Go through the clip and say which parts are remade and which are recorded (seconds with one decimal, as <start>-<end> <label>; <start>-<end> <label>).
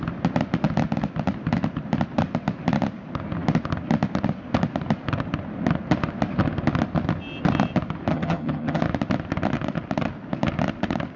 0.0-8.1 recorded; 8.1-8.8 remade; 8.8-11.2 recorded